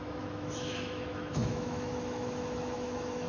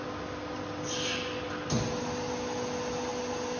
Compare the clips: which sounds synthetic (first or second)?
first